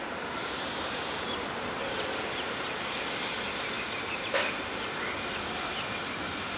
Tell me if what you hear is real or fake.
real